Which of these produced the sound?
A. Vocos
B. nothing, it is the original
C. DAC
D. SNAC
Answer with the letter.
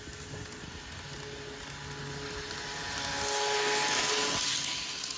B